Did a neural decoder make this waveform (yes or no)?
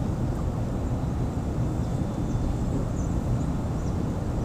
no